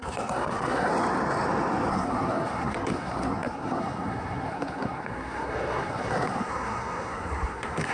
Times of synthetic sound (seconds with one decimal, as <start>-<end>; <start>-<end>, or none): 0.0-0.9; 1.9-7.9